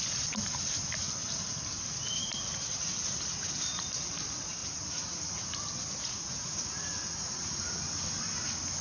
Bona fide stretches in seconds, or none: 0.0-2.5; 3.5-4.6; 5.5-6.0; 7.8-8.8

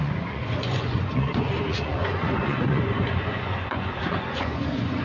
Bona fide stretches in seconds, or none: none